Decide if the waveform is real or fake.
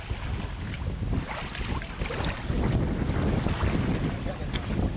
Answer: real